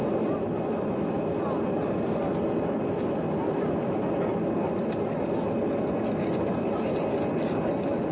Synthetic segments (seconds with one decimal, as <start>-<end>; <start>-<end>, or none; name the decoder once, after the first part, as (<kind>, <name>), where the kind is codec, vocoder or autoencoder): none

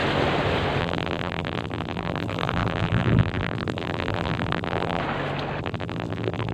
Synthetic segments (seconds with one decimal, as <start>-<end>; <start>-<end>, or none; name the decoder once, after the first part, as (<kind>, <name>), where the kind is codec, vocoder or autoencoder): 0.8-5.0 (vocoder, BigVGAN v2); 5.6-6.5